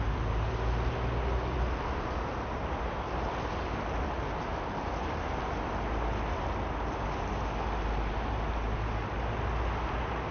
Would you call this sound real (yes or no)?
yes